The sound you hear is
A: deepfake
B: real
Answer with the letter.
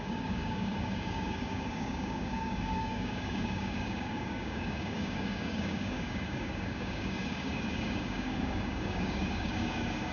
A